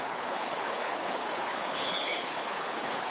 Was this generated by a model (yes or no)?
yes